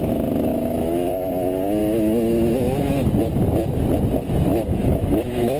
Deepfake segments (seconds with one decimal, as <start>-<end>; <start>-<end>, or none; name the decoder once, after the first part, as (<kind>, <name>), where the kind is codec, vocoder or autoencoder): 0.5-1.1 (autoencoder, DAC-VAE); 1.8-2.9; 4.5-5.6